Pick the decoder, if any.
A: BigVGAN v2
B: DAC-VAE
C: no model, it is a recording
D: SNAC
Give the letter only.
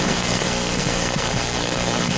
D